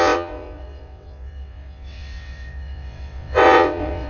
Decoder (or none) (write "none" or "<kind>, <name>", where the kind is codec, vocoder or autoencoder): vocoder, WaveNeXt